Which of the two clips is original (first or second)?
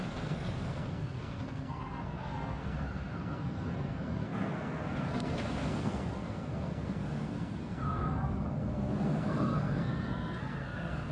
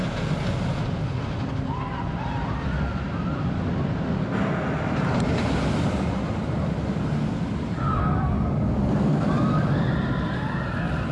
second